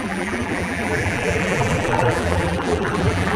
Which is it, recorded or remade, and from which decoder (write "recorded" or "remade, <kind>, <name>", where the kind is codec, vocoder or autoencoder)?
remade, vocoder, BigVGAN v2